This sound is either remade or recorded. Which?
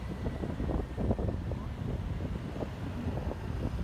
recorded